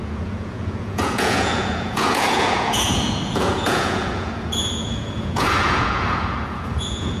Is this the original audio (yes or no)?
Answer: no